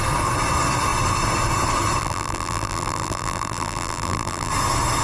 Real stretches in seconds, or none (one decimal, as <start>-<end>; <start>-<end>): 0.0-2.0; 4.5-5.0